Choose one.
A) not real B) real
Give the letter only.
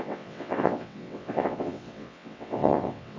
A